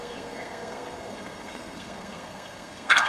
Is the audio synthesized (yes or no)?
yes